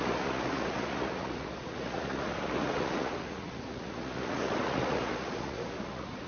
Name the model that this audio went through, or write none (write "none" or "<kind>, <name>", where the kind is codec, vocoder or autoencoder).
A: vocoder, Vocos